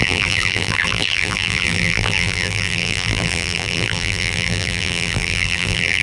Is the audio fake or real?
fake